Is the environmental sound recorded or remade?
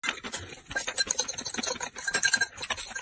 recorded